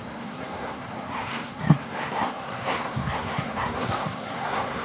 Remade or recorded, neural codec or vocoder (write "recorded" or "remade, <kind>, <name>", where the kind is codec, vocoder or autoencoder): remade, codec, SNAC